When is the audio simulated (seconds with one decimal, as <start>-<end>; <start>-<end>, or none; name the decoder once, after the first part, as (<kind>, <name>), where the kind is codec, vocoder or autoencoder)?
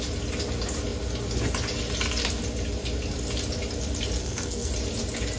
4.2-4.7 (codec, SNAC)